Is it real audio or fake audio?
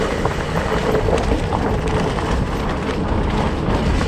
real